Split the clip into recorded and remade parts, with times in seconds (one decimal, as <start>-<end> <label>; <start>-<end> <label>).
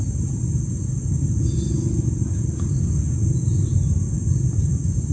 0.0-5.1 recorded